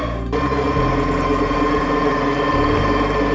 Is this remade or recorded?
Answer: recorded